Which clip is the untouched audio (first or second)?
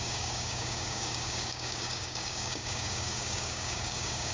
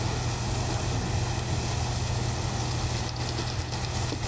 second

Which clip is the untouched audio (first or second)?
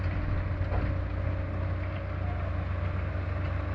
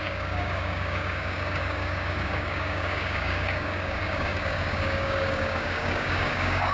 first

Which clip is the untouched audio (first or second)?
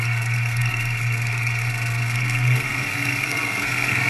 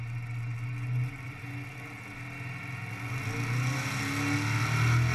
second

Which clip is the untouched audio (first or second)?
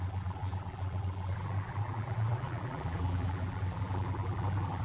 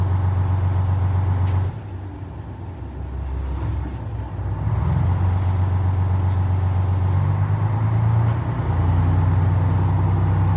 second